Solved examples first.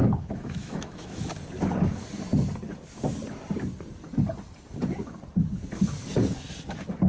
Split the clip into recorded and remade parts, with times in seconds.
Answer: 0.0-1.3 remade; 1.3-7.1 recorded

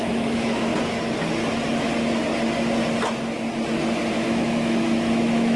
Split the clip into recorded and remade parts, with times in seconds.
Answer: 0.0-0.7 remade; 0.7-4.1 recorded; 4.1-5.6 remade

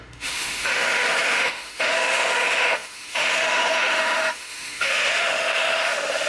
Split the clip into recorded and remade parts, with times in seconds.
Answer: 0.0-6.3 remade